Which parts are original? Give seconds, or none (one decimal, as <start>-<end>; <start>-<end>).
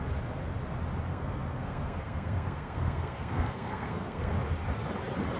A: 0.0-1.1; 4.3-5.4